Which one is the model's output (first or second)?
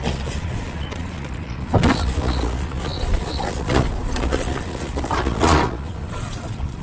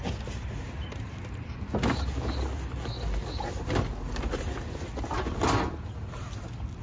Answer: first